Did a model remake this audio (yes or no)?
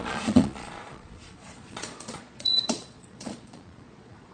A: yes